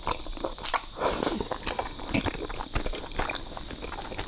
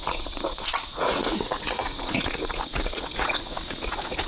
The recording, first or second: first